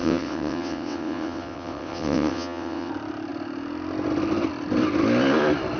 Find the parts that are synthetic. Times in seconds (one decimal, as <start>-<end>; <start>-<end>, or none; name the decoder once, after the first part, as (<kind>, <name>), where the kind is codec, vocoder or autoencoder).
0.0-2.9 (vocoder, WaveNeXt)